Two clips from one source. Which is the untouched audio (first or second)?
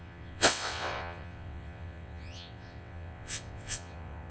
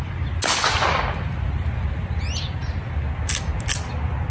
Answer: second